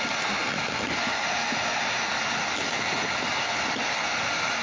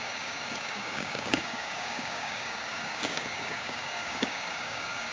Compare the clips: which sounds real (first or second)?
first